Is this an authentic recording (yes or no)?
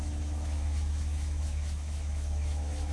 no